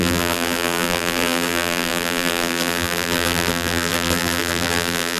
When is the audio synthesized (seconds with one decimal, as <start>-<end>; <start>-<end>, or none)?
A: 0.0-5.2